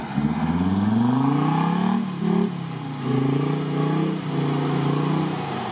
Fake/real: real